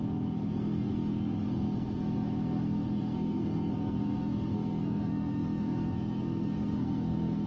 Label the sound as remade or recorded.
remade